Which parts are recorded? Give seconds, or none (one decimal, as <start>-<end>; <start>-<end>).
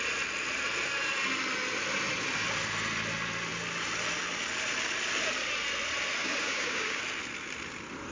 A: 0.0-6.2; 7.0-8.1